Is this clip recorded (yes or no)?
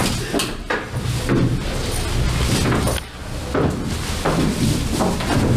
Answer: yes